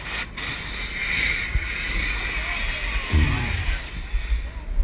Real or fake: real